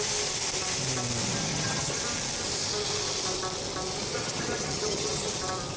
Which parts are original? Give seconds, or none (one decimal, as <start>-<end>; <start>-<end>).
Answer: 0.0-1.5; 2.0-4.1; 5.3-5.8

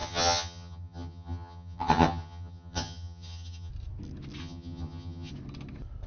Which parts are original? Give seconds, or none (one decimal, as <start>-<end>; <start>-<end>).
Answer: 3.7-4.4; 5.3-6.1

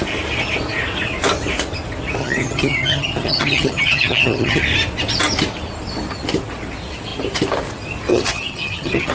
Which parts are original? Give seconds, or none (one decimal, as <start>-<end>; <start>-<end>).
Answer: 0.0-2.2; 4.6-8.1

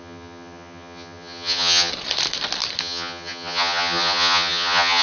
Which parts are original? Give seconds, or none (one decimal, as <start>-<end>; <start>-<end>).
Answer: 1.9-2.8

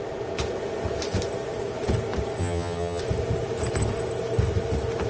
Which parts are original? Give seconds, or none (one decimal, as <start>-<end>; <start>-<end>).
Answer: 0.0-2.4; 3.0-5.1